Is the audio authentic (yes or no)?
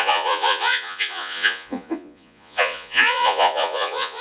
no